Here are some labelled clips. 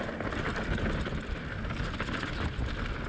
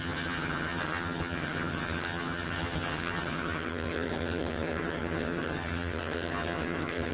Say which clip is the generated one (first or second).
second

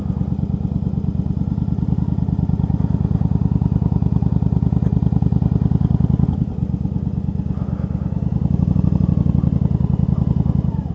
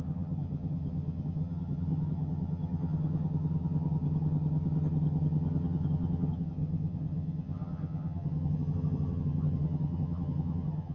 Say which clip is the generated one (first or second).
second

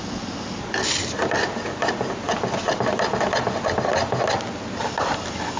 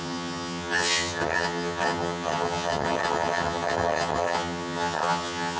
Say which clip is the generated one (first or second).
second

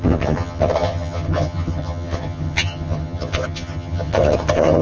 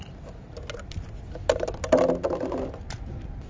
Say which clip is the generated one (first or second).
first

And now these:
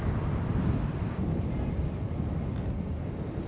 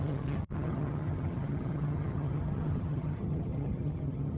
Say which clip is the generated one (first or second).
second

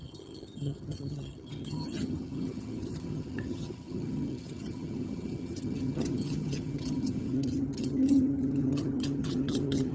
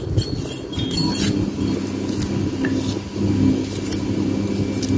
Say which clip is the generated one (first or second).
first